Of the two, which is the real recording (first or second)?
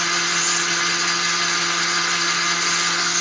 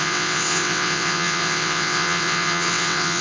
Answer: first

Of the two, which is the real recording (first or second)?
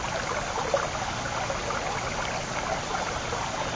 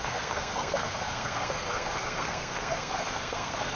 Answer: first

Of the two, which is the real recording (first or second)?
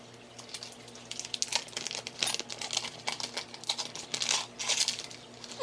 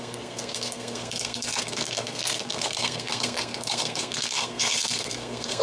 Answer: first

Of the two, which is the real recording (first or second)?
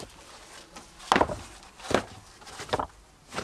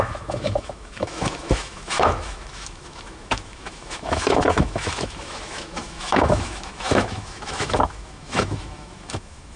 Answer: first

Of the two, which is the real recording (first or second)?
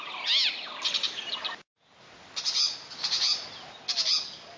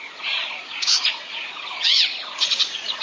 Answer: first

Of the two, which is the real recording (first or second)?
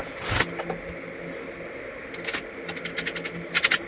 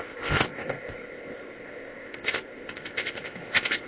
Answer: first